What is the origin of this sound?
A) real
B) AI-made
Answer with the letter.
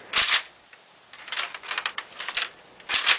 A